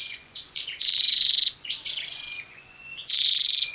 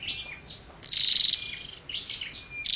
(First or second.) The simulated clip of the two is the first